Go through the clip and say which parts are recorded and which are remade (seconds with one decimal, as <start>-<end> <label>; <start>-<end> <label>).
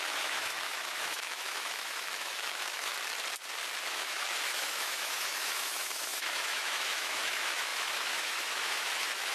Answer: 0.0-2.9 remade; 2.9-3.9 recorded; 3.9-9.3 remade